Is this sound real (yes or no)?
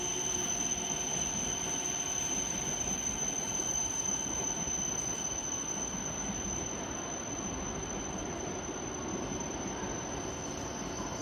yes